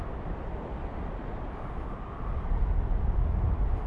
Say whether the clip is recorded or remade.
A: recorded